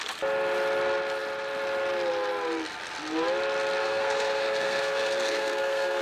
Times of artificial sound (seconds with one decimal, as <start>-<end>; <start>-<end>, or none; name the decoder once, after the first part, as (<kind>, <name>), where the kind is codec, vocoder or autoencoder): 3.8-6.0 (codec, SNAC)